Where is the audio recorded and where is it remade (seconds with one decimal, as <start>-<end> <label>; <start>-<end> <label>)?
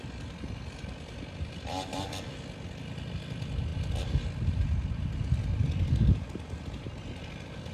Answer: 0.0-7.7 recorded